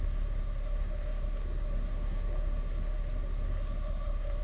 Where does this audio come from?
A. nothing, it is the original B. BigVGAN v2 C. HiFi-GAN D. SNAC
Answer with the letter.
D